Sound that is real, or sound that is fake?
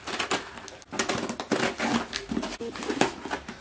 real